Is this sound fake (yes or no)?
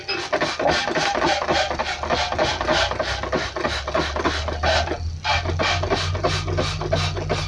no